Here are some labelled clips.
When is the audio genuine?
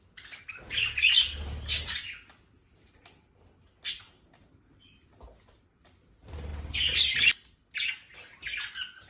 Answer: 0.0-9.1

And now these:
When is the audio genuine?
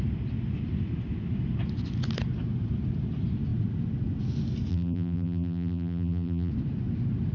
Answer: 0.0-4.7; 6.5-7.3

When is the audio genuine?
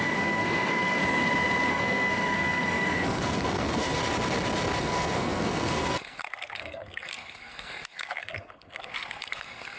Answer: 1.0-1.7; 4.0-4.8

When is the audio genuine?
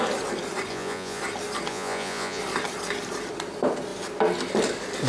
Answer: 0.0-0.7; 1.2-1.7; 2.4-5.1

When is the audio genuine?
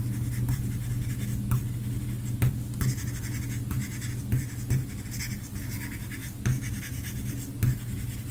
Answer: 0.0-8.3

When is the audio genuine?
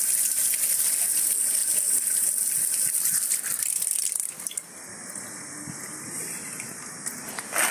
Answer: 0.0-7.7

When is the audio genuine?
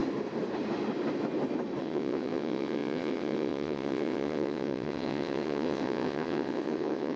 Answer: 0.0-1.8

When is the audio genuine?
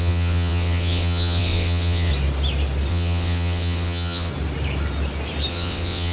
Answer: 2.1-2.9; 4.3-5.5